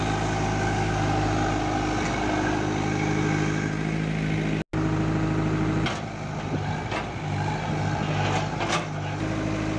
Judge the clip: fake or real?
real